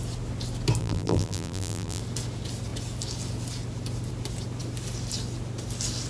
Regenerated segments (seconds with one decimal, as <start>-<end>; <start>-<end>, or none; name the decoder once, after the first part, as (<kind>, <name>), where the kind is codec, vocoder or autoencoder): 0.8-2.0 (vocoder, BigVGAN v2)